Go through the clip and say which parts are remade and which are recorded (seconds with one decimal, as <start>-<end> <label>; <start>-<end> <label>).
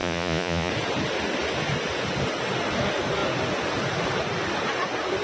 0.0-0.7 remade; 0.7-5.2 recorded